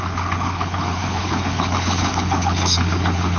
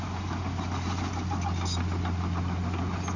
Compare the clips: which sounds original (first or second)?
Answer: second